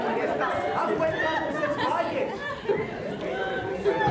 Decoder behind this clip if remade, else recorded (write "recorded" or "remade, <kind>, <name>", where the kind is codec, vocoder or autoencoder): recorded